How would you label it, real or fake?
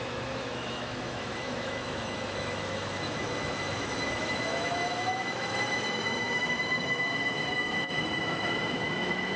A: fake